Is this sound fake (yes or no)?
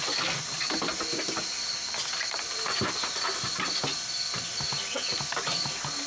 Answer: no